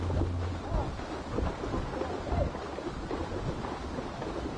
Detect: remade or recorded recorded